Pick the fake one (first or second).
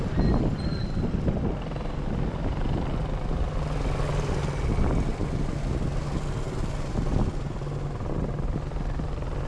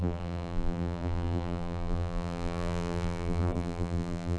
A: second